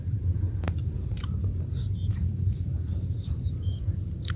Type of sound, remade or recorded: remade